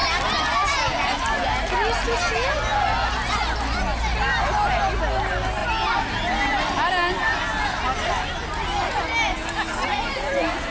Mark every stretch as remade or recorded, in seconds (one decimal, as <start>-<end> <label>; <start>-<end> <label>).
0.0-10.7 recorded